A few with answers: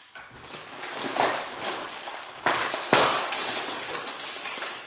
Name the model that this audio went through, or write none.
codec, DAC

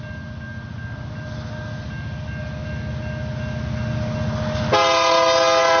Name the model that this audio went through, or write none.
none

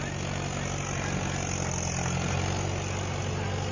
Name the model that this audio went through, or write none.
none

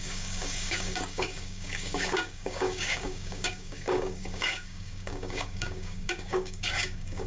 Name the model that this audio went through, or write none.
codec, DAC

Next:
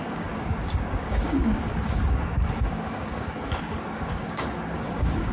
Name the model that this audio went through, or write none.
codec, DAC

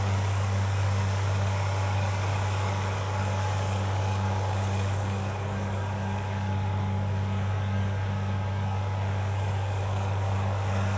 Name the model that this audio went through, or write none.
codec, DAC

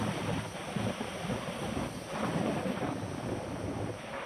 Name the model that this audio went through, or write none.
none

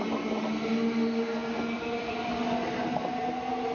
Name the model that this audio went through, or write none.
none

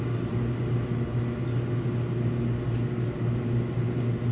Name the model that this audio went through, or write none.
none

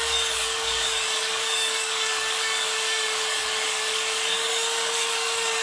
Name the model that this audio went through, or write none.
codec, DAC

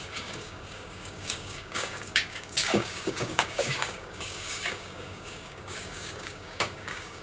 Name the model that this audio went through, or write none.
codec, DAC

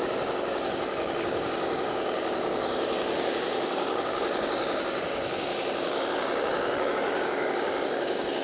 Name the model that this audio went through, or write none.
codec, DAC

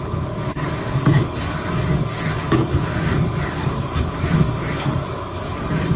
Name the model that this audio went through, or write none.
codec, DAC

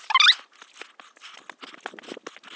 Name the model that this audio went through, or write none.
none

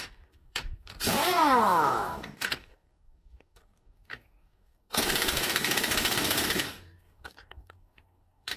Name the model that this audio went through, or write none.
codec, DAC